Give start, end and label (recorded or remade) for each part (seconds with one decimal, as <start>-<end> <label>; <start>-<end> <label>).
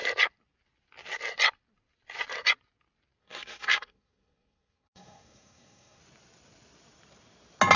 0.0-3.2 recorded; 3.2-6.0 remade; 6.0-7.8 recorded